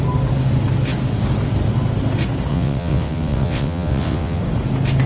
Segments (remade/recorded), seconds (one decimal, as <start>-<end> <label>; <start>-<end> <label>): 0.0-2.5 recorded; 2.5-4.4 remade; 4.4-5.1 recorded